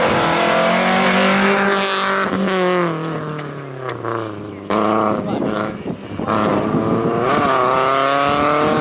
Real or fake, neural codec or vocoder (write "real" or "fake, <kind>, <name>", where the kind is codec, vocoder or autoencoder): real